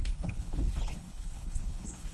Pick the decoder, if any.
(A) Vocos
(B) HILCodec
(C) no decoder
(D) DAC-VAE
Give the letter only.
B